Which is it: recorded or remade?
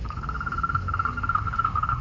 remade